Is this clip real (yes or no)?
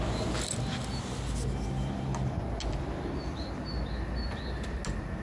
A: yes